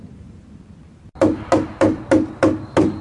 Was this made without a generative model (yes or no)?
yes